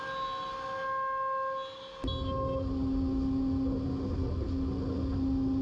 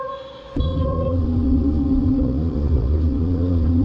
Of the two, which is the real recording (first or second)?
first